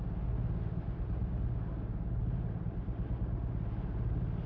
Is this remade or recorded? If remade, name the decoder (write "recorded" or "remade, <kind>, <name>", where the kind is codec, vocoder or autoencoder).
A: recorded